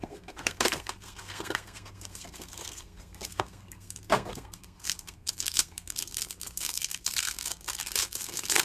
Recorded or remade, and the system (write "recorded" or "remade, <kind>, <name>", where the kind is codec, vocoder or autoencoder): remade, codec, SNAC